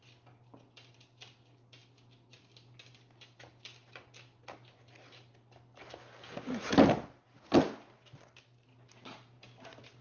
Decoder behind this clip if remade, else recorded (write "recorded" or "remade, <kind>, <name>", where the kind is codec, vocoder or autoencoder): recorded